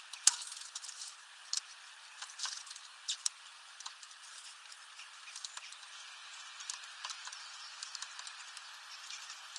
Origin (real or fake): real